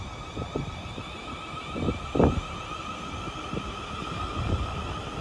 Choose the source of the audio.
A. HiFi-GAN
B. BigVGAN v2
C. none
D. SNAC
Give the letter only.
C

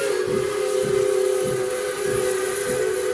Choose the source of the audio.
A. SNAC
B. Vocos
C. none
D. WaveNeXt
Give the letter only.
C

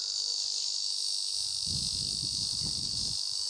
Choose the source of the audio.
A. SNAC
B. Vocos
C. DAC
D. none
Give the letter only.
D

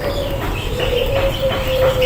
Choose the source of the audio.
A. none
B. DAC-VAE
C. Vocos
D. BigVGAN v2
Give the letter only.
D